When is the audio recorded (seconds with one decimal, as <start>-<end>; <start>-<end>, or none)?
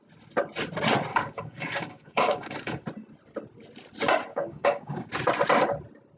0.0-1.1; 2.8-4.3; 5.1-6.2